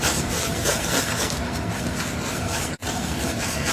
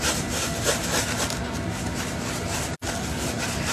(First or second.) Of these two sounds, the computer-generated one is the first